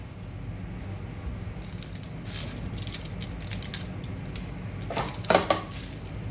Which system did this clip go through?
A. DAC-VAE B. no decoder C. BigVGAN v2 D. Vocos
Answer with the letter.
B